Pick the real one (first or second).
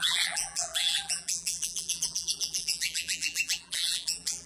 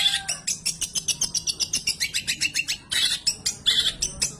second